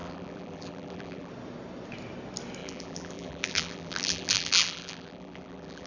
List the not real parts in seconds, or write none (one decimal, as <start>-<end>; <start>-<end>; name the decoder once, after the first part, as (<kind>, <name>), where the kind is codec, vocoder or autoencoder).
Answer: 0.0-1.3 (vocoder, BigVGAN v2); 2.6-5.9